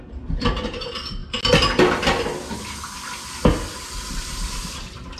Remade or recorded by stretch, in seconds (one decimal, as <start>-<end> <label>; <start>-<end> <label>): 0.0-1.2 remade; 1.2-4.3 recorded; 4.3-5.2 remade